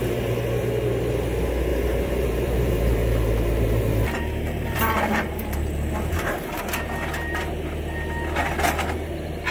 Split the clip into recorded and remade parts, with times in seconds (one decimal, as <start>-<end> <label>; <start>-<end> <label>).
0.0-1.7 recorded; 1.7-6.6 remade; 6.6-9.5 recorded